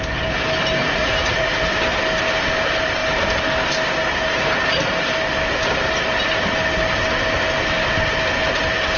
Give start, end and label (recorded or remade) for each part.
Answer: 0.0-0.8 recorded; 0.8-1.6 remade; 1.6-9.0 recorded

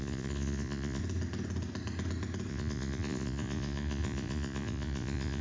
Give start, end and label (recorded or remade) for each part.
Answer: 0.0-1.0 remade; 1.0-2.5 recorded; 2.5-5.4 remade

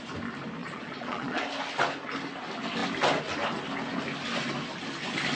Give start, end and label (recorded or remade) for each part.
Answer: 0.0-0.6 recorded; 0.6-1.4 remade; 1.4-5.3 recorded